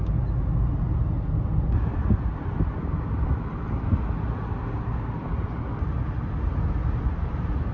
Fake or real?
real